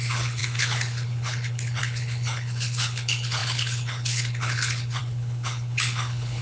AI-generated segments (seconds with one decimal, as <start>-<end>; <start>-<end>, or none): 0.0-6.4